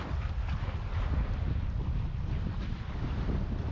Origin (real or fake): real